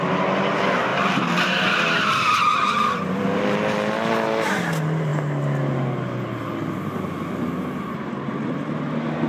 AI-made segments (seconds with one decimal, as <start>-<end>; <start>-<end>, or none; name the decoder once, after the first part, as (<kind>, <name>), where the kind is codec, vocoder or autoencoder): 0.9-3.4 (vocoder, BigVGAN v2)